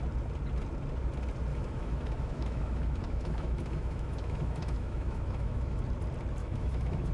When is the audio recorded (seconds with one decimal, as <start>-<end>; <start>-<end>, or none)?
0.0-1.5; 5.8-6.4